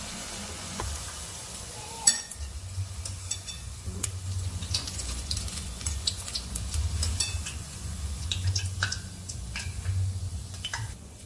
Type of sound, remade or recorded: remade